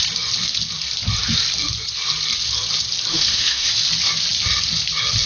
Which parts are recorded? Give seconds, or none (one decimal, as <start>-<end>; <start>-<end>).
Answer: 0.0-3.1; 3.7-5.3